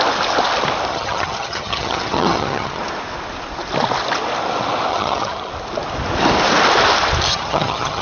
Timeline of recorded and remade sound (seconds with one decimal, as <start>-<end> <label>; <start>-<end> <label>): 0.0-0.9 recorded; 0.9-2.8 remade; 2.8-4.9 recorded; 4.9-5.5 remade; 5.5-7.3 recorded; 7.3-8.0 remade